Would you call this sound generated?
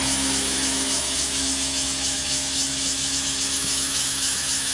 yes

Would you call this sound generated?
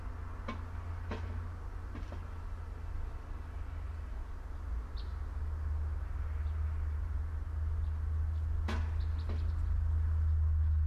no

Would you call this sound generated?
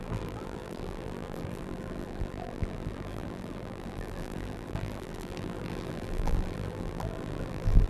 yes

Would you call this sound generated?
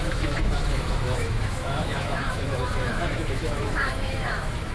yes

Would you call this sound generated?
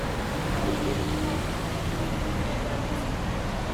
no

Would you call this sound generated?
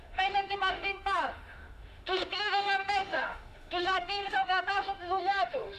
yes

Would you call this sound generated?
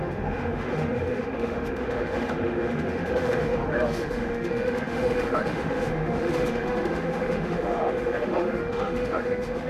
yes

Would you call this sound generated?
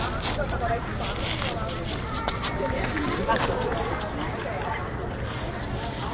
no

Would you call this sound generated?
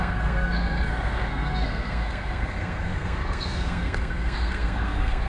yes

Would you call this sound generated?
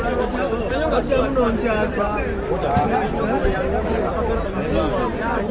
no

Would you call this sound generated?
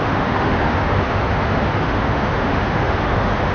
yes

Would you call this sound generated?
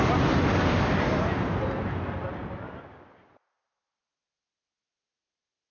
no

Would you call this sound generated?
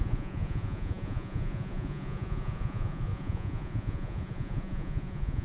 yes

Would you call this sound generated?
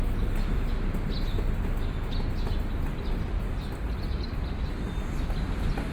no